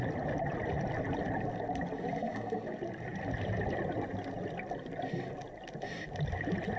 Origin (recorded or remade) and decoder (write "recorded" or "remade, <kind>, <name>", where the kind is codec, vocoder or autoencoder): recorded